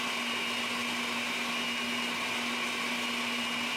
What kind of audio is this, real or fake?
real